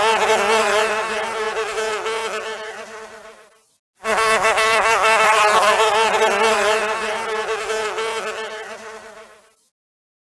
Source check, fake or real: real